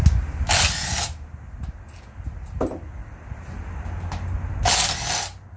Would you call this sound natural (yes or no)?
yes